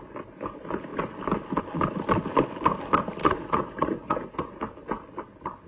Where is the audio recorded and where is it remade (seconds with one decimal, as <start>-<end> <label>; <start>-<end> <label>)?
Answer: 0.0-3.2 recorded; 3.2-4.6 remade; 4.6-5.7 recorded